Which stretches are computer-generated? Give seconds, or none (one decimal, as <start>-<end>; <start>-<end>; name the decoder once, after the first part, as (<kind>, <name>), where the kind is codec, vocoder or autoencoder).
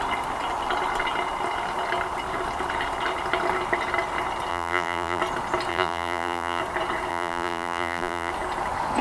4.5-5.2 (vocoder, BigVGAN v2); 5.7-6.6; 7.1-8.3